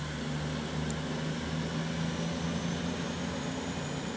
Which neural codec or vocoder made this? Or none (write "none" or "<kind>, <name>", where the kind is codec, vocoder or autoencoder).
none